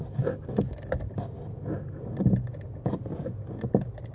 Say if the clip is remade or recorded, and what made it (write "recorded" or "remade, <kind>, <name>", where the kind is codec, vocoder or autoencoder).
recorded